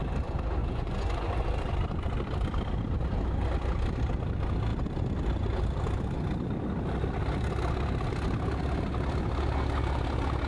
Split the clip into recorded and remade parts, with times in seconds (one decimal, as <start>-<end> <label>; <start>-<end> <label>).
0.0-0.6 recorded; 0.6-1.5 remade; 1.5-10.5 recorded